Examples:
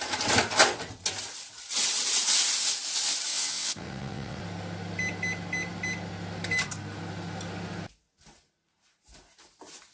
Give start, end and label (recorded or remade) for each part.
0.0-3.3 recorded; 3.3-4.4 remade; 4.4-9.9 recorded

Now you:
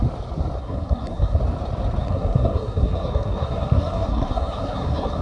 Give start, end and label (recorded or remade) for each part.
0.0-0.6 recorded; 0.6-1.4 remade; 1.4-2.0 recorded; 2.0-5.2 remade

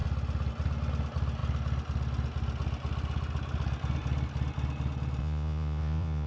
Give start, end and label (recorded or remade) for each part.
0.0-5.2 recorded; 5.2-6.3 remade

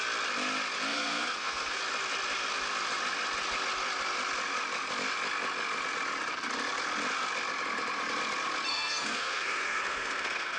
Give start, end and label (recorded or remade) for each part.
0.0-0.9 recorded; 0.9-1.8 remade; 1.8-8.7 recorded; 8.7-10.6 remade

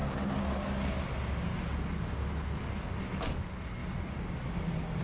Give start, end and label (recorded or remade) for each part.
0.0-3.0 recorded; 3.0-3.8 remade; 3.8-5.0 recorded